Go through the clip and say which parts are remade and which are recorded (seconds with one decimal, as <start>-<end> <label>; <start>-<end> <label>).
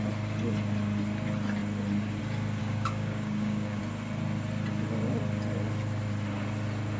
0.0-2.6 recorded; 2.6-3.8 remade; 3.8-7.0 recorded